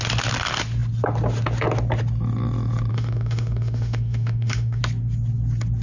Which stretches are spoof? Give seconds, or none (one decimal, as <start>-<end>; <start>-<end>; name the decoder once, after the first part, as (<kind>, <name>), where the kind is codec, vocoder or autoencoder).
2.9-4.8 (autoencoder, DAC-VAE)

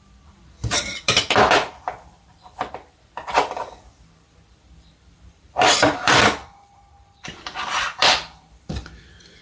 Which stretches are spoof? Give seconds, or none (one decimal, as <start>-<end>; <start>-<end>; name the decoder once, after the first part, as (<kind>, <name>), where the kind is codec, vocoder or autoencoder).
0.0-9.4 (vocoder, BigVGAN v2)

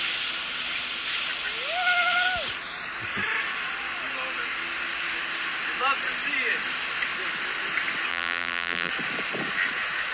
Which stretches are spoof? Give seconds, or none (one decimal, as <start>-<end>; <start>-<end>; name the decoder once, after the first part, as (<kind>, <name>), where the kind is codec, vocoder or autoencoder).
8.1-8.9 (vocoder, BigVGAN v2)

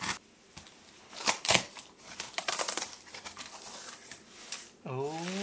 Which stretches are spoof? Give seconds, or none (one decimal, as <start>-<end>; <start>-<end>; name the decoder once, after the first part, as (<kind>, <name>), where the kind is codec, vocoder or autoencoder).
1.0-1.7 (codec, HILCodec)